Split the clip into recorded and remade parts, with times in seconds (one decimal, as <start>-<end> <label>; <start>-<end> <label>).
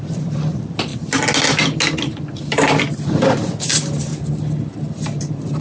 0.0-0.9 remade; 0.9-3.6 recorded; 3.6-4.1 remade; 4.1-4.8 recorded; 4.8-5.6 remade